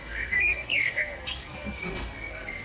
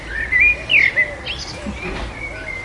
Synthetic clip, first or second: first